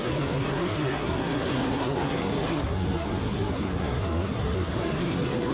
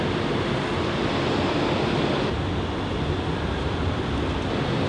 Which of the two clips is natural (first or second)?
second